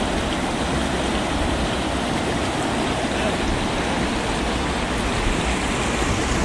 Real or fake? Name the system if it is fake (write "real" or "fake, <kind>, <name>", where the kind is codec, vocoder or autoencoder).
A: real